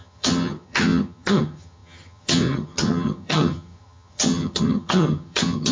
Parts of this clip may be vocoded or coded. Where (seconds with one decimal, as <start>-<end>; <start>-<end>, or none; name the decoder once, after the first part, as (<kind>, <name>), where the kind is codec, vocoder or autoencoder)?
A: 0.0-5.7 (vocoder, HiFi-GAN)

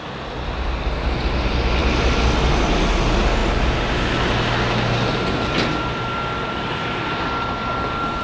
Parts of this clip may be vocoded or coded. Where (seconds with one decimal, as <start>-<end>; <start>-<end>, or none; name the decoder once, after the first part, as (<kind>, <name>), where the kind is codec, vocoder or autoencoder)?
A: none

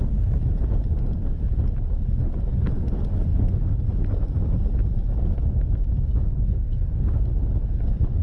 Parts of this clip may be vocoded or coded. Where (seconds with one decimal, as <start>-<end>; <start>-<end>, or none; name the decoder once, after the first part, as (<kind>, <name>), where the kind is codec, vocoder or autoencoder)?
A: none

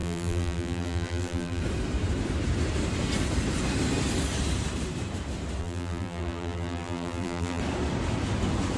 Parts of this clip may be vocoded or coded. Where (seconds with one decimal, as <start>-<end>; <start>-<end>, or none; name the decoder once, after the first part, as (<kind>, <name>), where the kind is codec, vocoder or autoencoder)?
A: 0.0-1.6 (vocoder, BigVGAN v2); 5.6-7.6